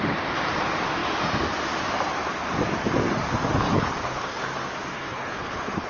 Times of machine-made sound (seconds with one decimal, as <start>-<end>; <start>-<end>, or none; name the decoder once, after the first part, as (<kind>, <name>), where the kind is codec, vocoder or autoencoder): 3.7-4.4 (codec, HILCodec); 4.9-5.9